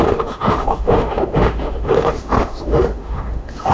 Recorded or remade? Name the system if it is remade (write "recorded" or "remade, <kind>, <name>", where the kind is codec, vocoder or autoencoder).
remade, autoencoder, DAC-VAE